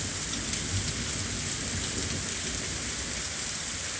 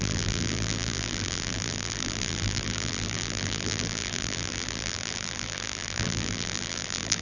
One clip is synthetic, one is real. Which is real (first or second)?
first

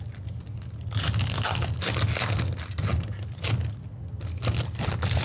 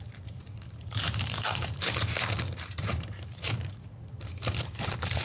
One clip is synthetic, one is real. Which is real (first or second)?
first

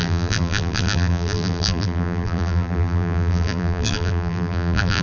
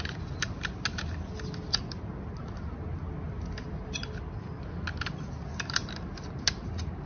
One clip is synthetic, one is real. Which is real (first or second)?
second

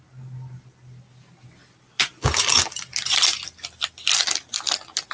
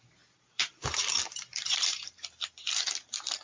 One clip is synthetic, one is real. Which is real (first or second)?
first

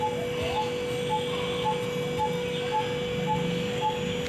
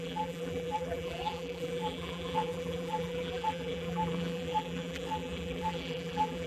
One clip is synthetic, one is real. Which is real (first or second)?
first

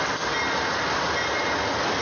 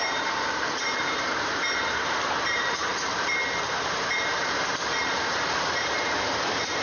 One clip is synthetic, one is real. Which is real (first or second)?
first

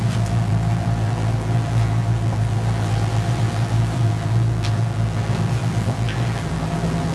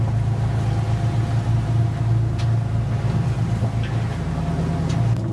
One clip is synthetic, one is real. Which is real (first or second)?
second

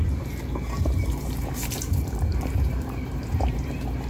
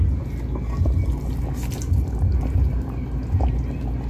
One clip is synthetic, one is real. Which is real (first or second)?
second